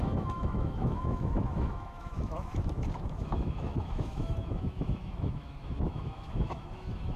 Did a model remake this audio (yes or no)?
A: yes